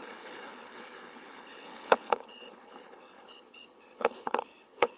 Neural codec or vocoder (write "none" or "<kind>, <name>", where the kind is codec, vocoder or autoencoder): codec, HILCodec